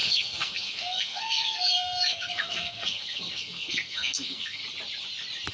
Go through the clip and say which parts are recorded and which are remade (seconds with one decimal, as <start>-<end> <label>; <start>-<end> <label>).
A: 0.0-4.6 remade; 4.6-5.5 recorded